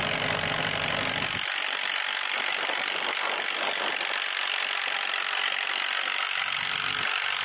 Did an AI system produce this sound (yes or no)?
no